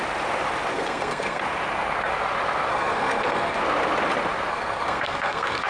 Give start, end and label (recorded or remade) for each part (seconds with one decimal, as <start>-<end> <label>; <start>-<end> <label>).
0.0-0.7 recorded; 0.7-1.4 remade; 1.4-2.7 recorded; 2.7-3.6 remade; 3.6-4.5 recorded; 4.5-5.7 remade